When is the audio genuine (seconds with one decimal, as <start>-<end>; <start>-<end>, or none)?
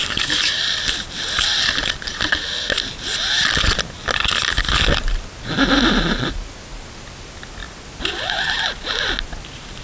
0.6-9.8